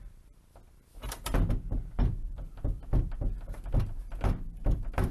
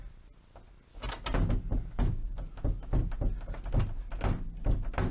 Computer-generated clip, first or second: first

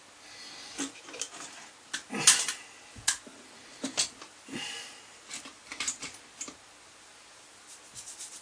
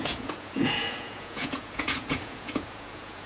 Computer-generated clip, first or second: second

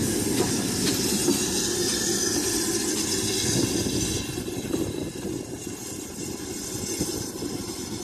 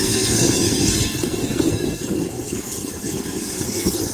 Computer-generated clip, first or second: second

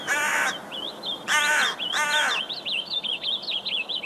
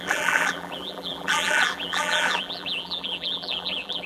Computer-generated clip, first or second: second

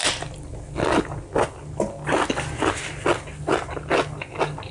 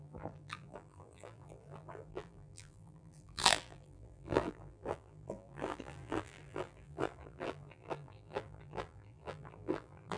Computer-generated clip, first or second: second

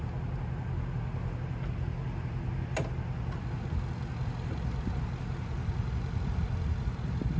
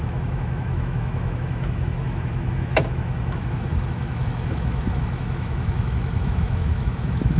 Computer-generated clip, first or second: second